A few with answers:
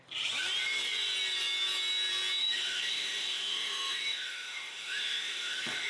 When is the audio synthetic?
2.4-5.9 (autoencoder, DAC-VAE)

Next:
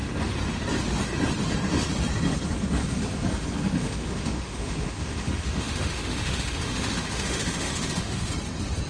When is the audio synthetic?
3.8-8.3 (autoencoder, DAC-VAE)

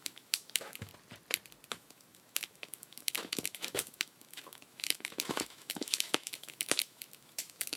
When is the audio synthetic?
0.0-0.9 (autoencoder, DAC-VAE); 1.7-7.8

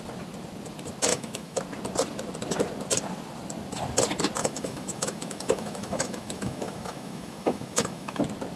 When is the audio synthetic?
1.1-1.6 (autoencoder, DAC-VAE); 4.4-8.2

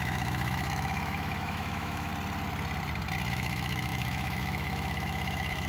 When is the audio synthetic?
0.0-2.1 (autoencoder, DAC-VAE); 3.3-5.7

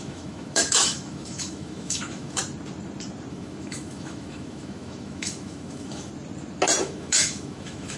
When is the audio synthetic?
0.0-2.4 (autoencoder, DAC-VAE); 3.3-6.1; 6.8-8.0

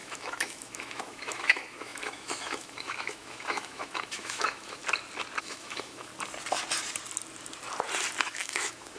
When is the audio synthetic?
0.0-4.8 (autoencoder, DAC-VAE); 5.4-6.1; 8.2-9.0

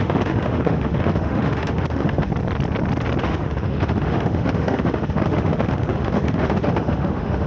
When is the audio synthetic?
0.0-2.3 (autoencoder, DAC-VAE); 3.2-7.5